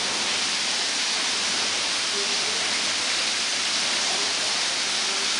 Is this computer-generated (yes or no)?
yes